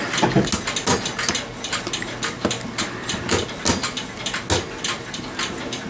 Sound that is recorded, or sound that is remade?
recorded